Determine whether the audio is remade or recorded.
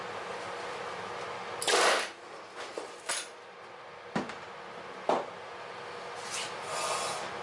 recorded